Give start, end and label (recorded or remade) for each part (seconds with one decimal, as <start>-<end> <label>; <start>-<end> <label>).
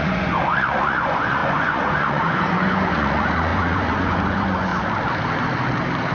0.0-4.7 remade; 4.7-6.1 recorded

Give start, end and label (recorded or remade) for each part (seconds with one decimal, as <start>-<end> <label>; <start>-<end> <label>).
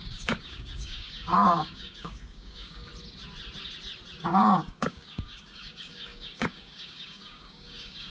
0.0-2.9 remade; 2.9-4.2 recorded; 4.2-8.1 remade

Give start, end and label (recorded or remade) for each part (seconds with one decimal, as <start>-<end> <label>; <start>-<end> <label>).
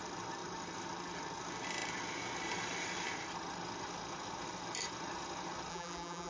0.0-5.7 recorded; 5.7-6.3 remade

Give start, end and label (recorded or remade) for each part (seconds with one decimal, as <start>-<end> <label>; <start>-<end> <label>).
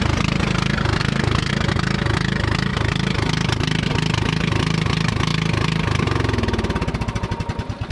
0.0-1.0 recorded; 1.0-1.5 remade; 1.5-7.9 recorded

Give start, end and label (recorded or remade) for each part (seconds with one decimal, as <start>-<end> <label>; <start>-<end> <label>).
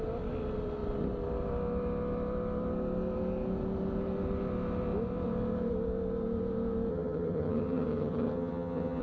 0.0-6.9 recorded; 6.9-9.0 remade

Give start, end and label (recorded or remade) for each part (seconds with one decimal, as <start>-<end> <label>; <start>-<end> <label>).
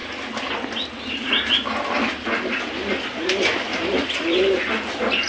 0.0-3.7 recorded; 3.7-4.7 remade; 4.7-5.3 recorded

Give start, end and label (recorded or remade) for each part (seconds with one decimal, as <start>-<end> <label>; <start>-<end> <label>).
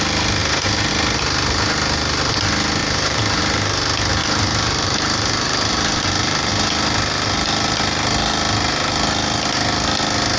0.0-0.4 recorded; 0.4-0.9 remade; 0.9-2.8 recorded; 2.8-3.4 remade; 3.4-4.2 recorded; 4.2-6.5 remade; 6.5-10.4 recorded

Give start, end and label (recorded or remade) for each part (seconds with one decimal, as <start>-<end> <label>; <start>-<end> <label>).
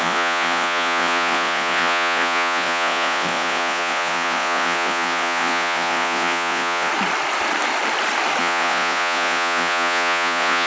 0.0-6.9 remade; 6.9-8.4 recorded; 8.4-10.7 remade